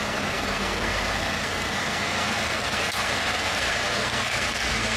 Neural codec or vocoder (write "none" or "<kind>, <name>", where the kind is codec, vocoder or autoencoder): codec, SNAC